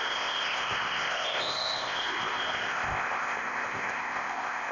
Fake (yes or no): yes